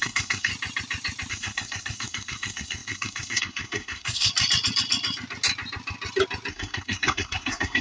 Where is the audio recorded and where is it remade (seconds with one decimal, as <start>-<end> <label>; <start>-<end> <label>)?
0.0-0.5 remade; 0.5-1.3 recorded; 1.3-4.3 remade; 4.3-6.5 recorded; 6.5-7.8 remade